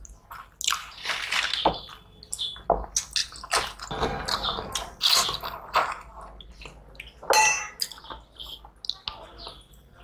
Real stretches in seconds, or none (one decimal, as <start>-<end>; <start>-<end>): 0.0-10.0